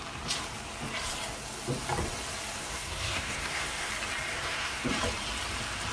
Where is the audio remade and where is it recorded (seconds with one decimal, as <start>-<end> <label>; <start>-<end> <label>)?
0.0-2.6 recorded; 2.6-3.9 remade; 3.9-4.3 recorded; 4.3-4.8 remade; 4.8-5.9 recorded